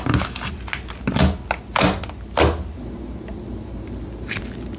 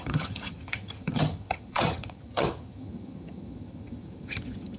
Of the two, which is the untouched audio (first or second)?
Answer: first